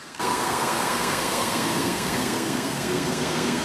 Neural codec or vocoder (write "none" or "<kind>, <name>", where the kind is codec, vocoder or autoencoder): codec, SNAC